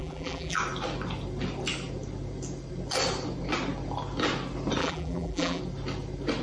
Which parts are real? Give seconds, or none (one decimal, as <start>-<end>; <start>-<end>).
0.6-4.8; 5.6-6.4

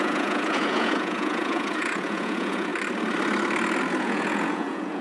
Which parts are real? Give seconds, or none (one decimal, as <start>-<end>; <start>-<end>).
2.7-4.0

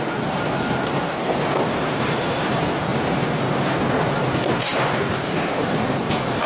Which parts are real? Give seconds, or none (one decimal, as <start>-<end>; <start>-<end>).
0.0-4.7; 6.0-6.5

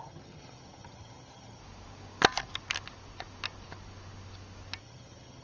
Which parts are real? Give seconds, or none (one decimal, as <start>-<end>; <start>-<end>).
1.6-4.8

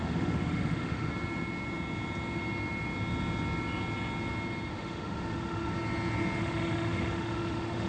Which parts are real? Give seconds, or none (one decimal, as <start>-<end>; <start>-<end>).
1.1-4.7; 5.7-6.4

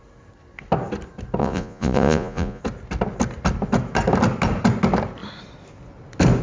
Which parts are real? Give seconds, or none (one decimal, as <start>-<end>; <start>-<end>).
0.0-1.4; 2.6-6.4

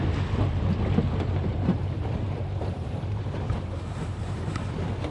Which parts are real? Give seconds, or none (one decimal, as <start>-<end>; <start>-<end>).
0.0-1.5; 4.6-5.1